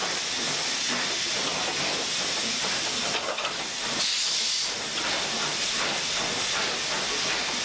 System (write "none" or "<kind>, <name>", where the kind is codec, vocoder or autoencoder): none